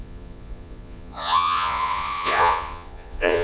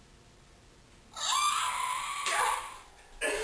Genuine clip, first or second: second